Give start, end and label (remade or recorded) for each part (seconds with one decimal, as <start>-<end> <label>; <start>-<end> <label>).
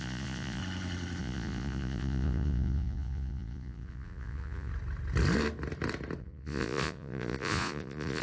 0.0-0.6 remade; 0.6-1.2 recorded; 1.2-4.7 remade; 4.7-6.2 recorded; 6.2-8.2 remade